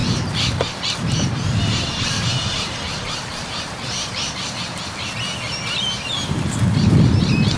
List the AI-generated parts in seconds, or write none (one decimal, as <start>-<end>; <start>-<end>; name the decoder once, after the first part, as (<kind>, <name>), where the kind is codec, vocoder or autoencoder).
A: 0.0-4.6 (vocoder, BigVGAN v2)